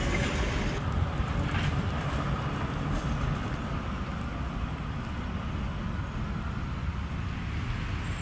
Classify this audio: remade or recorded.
recorded